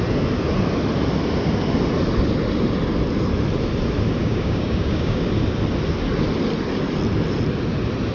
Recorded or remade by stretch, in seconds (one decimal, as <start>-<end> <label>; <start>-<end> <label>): 0.0-4.2 recorded; 4.2-5.3 remade; 5.3-8.1 recorded